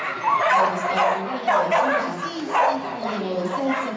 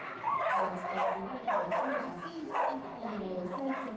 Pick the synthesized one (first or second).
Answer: second